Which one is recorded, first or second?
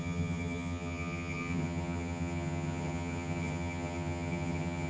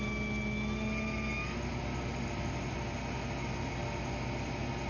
second